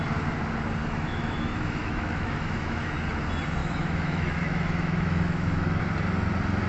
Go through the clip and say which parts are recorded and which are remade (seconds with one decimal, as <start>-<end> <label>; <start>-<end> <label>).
0.0-0.8 recorded; 0.8-2.8 remade; 2.8-3.6 recorded; 3.6-5.8 remade; 5.8-6.7 recorded